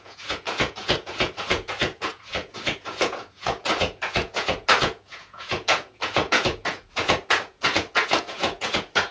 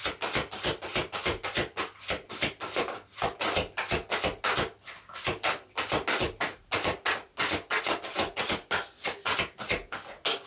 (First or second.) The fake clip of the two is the first